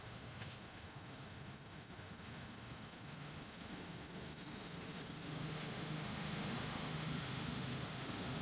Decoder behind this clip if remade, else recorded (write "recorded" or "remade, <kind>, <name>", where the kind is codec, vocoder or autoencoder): remade, autoencoder, DAC-VAE